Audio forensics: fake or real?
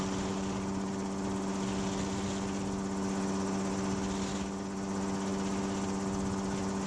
real